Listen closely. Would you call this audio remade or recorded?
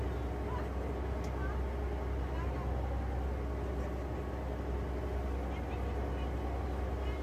recorded